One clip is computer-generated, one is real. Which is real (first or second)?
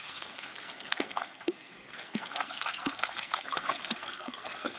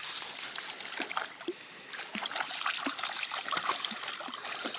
second